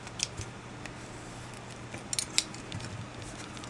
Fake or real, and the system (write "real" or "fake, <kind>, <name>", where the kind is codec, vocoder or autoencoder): real